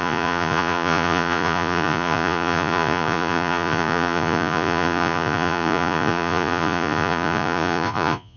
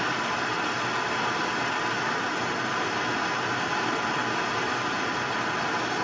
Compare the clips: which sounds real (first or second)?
second